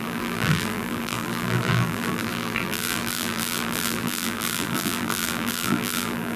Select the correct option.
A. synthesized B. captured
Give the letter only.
A